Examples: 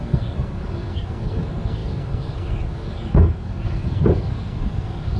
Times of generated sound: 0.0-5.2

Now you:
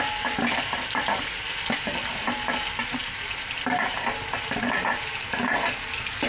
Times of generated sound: none

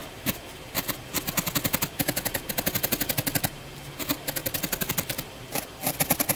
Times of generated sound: none

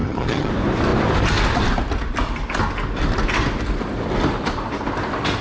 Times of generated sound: 0.0-0.5

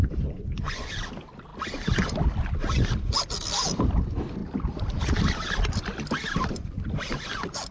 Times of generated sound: 0.0-0.9

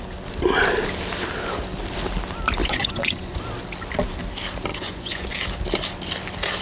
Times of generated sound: 2.6-3.4; 4.7-5.3